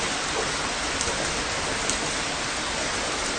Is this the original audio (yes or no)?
yes